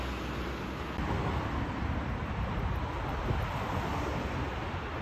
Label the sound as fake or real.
real